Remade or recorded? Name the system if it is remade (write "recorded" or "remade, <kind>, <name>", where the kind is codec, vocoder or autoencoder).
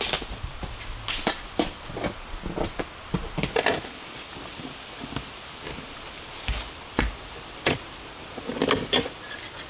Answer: recorded